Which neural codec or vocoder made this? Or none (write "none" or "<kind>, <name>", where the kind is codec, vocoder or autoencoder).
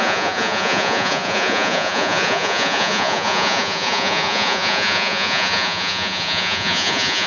vocoder, Vocos